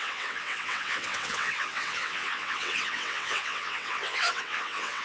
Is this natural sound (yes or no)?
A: no